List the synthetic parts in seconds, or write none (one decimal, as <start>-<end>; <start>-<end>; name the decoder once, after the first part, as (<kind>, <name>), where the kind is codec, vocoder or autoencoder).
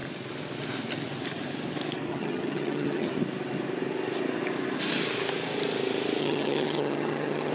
2.1-3.1 (vocoder, HiFi-GAN); 6.2-7.5